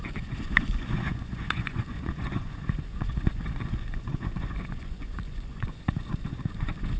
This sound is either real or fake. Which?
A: fake